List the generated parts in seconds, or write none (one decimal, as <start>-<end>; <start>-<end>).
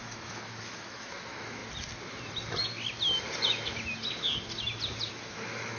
0.0-1.6; 5.1-5.8